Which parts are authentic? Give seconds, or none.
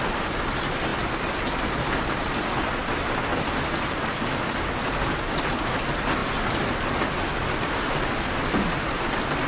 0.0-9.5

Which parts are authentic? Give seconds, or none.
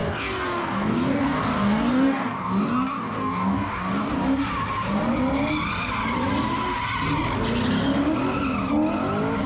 4.1-9.5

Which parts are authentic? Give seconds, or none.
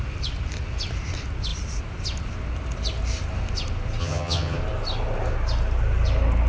0.0-4.0; 4.6-6.5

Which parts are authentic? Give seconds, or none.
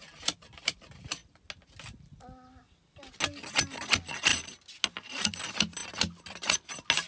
0.0-7.1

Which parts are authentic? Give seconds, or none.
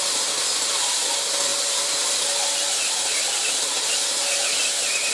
0.0-5.1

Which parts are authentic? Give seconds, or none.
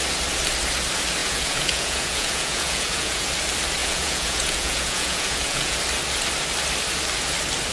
0.0-1.2; 3.3-3.8; 5.8-7.7